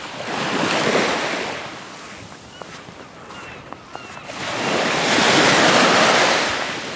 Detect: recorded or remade recorded